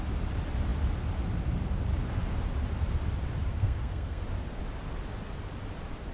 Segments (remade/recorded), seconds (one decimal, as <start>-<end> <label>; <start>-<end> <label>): 0.0-3.5 recorded; 3.5-4.2 remade; 4.2-6.1 recorded